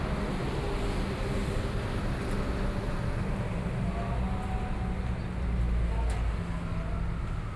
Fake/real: real